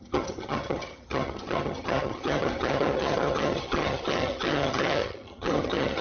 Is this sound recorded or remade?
remade